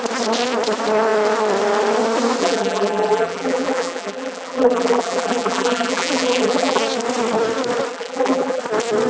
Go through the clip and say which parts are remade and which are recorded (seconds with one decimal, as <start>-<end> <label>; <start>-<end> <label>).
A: 0.0-2.4 recorded; 2.4-6.8 remade; 6.8-7.9 recorded; 7.9-8.6 remade; 8.6-9.1 recorded

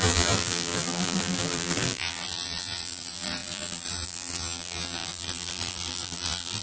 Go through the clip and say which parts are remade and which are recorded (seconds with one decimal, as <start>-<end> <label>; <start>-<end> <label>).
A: 0.0-6.6 remade